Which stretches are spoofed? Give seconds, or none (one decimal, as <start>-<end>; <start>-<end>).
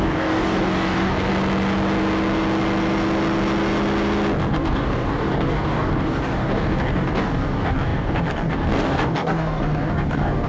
0.0-1.3; 4.5-10.5